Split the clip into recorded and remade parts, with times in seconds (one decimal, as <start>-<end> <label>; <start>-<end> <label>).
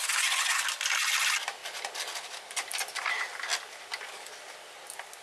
0.0-5.2 recorded